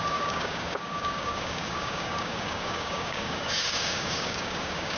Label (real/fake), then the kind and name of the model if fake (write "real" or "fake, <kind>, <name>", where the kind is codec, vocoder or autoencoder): fake, codec, DAC